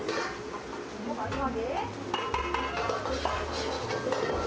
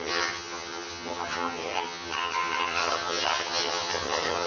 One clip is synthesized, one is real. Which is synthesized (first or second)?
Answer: second